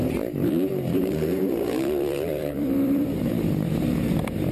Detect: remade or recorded remade